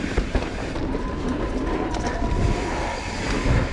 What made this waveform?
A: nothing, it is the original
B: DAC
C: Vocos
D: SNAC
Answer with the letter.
A